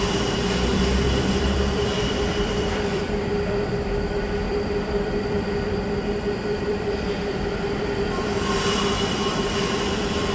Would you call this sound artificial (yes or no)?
yes